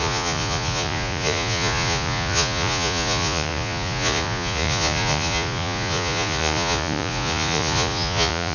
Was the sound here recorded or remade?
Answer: remade